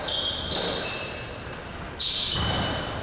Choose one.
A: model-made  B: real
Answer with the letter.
B